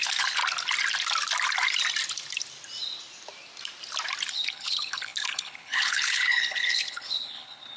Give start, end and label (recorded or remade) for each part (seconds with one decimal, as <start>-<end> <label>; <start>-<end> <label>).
0.0-0.4 remade; 0.4-4.3 recorded; 4.3-7.8 remade